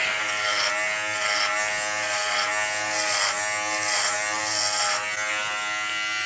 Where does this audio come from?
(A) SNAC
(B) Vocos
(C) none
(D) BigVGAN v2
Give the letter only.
C